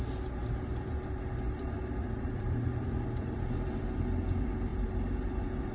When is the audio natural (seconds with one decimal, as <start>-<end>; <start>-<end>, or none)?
0.0-0.4; 3.8-4.7; 5.3-5.7